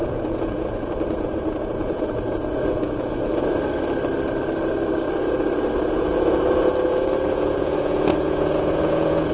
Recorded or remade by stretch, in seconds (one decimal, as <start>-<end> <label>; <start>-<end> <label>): 0.0-3.3 remade; 3.3-5.9 recorded; 5.9-9.3 remade